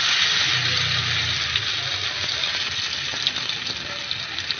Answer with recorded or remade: recorded